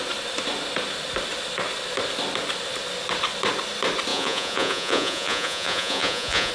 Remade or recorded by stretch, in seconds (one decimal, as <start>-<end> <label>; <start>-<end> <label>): 0.0-4.1 recorded; 4.1-6.5 remade